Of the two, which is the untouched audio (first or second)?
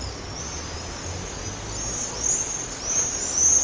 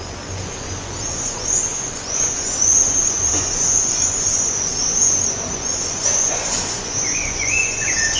first